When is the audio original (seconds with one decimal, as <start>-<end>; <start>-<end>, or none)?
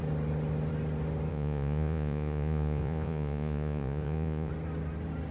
0.0-1.3; 4.5-5.3